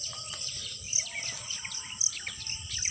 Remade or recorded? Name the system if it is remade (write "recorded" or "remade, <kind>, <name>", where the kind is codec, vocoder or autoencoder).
remade, vocoder, BigVGAN v2